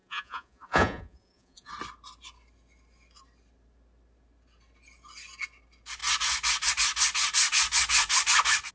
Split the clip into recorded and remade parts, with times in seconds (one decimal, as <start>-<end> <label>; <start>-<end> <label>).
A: 0.0-1.7 remade; 1.7-8.7 recorded